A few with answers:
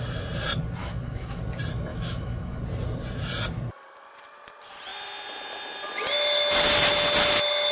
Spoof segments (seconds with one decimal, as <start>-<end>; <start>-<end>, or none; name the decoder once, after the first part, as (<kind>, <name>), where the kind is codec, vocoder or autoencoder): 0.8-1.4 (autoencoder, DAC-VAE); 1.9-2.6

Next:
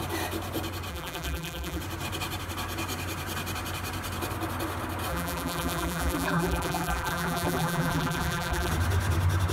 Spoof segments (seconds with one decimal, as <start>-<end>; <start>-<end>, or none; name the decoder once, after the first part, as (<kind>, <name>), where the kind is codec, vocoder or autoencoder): 0.9-1.8 (vocoder, BigVGAN v2); 5.1-8.7

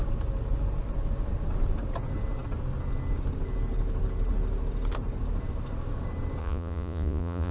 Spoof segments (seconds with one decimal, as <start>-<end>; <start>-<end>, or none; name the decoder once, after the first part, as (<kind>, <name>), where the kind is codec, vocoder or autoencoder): 6.4-7.5 (vocoder, Vocos)

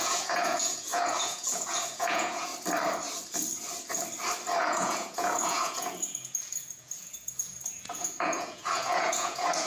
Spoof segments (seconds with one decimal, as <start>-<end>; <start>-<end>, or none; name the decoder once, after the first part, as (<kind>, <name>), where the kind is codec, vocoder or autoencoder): 0.0-2.5 (vocoder, Vocos); 4.6-9.7

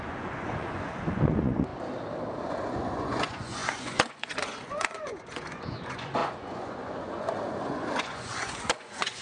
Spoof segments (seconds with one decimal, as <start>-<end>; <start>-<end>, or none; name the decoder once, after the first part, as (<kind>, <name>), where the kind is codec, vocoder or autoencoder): 0.0-1.7 (vocoder, Vocos); 2.4-9.2

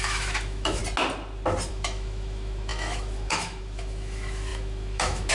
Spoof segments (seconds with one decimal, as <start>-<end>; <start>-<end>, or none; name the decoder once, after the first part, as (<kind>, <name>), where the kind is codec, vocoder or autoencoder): 0.0-0.8 (autoencoder, DAC-VAE); 1.7-5.3

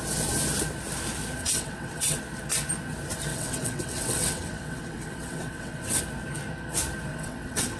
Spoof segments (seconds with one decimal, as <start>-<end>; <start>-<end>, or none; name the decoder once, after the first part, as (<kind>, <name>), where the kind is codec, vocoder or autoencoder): 1.4-2.2 (vocoder, WaveNeXt); 3.3-6.0; 7.1-7.8